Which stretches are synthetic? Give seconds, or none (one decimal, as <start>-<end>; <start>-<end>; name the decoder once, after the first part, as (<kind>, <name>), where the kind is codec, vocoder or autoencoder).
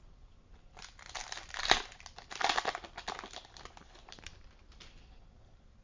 none